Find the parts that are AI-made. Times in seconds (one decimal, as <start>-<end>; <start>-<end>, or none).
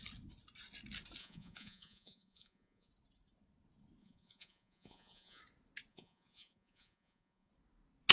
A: 1.2-2.9; 4.0-5.4; 5.9-7.5